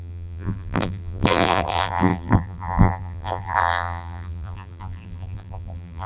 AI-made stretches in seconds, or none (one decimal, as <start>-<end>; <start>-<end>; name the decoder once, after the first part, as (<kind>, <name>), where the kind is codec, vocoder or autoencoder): 0.0-6.1 (vocoder, BigVGAN v2)